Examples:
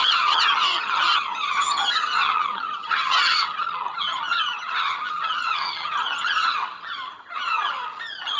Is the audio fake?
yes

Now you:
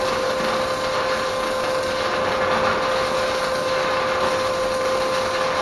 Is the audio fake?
no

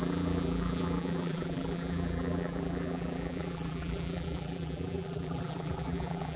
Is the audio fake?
yes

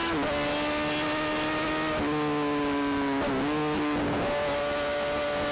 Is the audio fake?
no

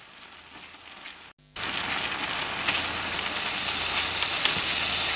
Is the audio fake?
no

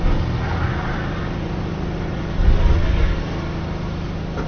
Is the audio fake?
no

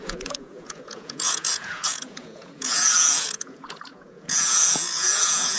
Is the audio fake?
yes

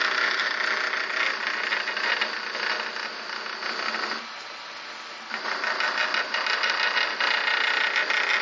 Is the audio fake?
no